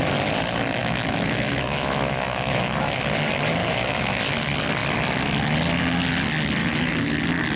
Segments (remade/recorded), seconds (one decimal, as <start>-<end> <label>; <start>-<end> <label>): 0.0-0.8 recorded; 0.8-3.0 remade; 3.0-3.6 recorded; 3.6-4.2 remade; 4.2-6.6 recorded; 6.6-7.1 remade; 7.1-7.6 recorded